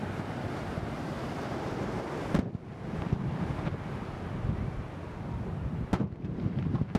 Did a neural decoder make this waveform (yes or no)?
no